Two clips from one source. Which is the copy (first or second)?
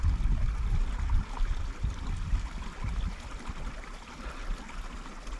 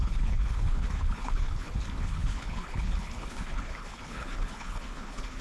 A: second